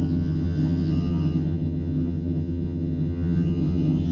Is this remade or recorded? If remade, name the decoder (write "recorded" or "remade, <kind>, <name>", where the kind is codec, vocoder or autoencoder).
remade, vocoder, HiFi-GAN